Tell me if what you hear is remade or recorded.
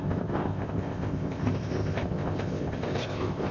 remade